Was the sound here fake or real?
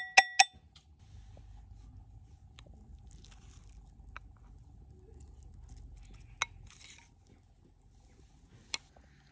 real